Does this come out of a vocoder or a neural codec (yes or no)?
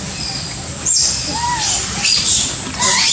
no